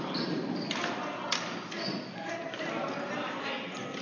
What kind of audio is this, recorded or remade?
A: recorded